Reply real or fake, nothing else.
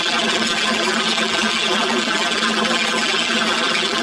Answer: fake